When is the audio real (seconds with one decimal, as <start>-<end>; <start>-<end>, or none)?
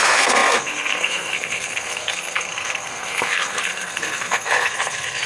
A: none